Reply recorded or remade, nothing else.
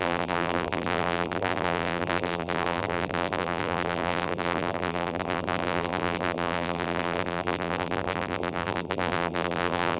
remade